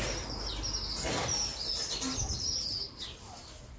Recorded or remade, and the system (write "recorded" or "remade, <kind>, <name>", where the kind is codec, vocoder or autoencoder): recorded